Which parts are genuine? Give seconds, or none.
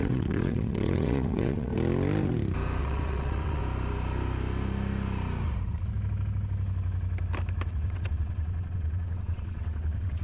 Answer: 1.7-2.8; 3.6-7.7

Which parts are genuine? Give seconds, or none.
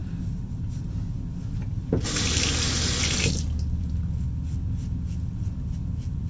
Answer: 0.0-6.3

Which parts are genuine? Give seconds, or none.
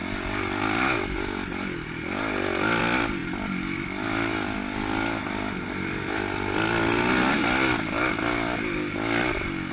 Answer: 0.0-9.7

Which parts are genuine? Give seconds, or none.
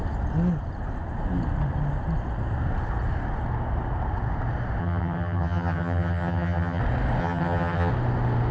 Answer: 0.0-4.8; 6.8-7.2; 7.9-8.5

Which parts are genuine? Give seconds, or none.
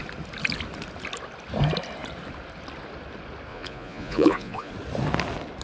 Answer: 0.0-3.5; 4.7-5.6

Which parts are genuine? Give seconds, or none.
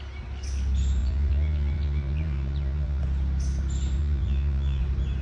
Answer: 0.0-1.0; 3.0-4.0; 4.8-5.2